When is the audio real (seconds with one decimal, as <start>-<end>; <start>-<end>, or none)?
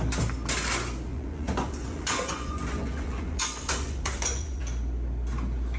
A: 0.0-1.1; 4.6-5.8